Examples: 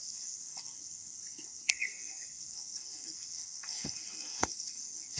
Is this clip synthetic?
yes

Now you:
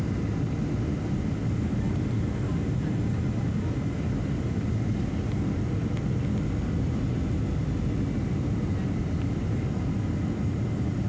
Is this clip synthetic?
no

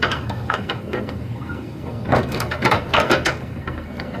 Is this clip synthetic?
yes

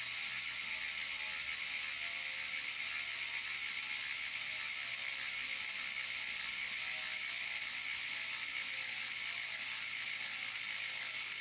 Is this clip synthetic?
no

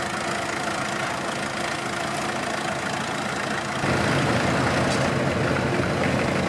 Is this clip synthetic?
no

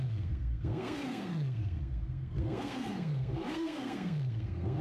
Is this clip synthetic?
yes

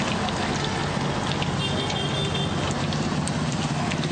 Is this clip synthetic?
no